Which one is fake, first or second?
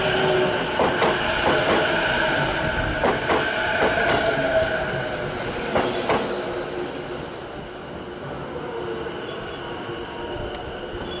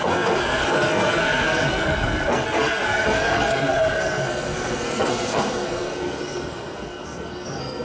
second